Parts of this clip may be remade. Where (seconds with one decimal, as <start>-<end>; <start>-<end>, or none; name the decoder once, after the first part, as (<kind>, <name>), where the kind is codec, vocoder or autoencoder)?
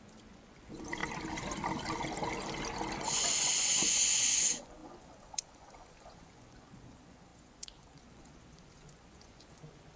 0.0-1.0 (vocoder, Vocos); 3.0-10.0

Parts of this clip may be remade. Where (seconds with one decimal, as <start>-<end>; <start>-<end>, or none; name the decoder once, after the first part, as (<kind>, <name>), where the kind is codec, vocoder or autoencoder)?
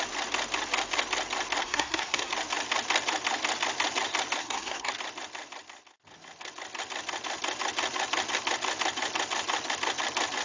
1.6-2.3 (codec, SNAC); 4.4-4.9